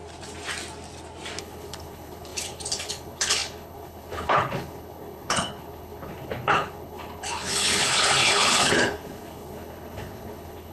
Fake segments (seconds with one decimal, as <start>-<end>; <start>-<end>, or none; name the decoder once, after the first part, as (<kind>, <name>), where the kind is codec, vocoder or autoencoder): 1.4-10.7 (codec, HILCodec)